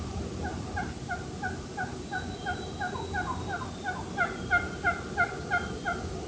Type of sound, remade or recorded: recorded